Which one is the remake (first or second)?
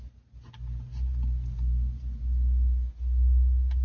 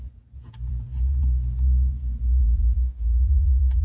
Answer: second